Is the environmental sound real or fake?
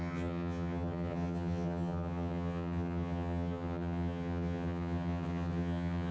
fake